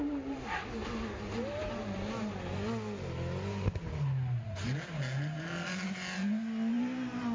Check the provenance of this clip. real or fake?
real